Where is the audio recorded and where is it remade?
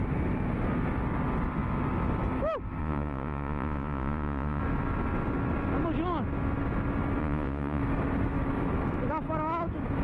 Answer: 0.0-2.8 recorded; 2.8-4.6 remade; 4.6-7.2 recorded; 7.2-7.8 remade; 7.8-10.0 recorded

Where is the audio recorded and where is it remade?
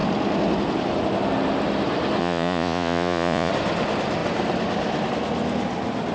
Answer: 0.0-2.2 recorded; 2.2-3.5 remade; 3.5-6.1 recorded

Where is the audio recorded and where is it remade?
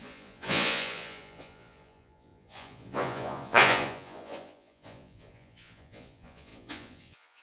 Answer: 0.0-7.4 remade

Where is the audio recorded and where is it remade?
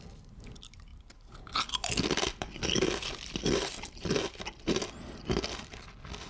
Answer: 0.0-6.3 recorded